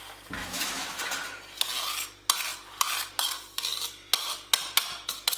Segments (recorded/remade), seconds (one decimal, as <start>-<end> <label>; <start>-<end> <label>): 0.0-0.4 recorded; 0.4-1.0 remade; 1.0-5.4 recorded